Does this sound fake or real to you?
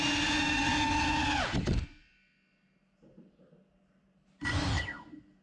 real